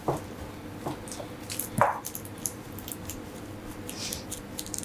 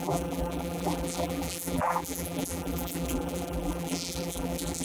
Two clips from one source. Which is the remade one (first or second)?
second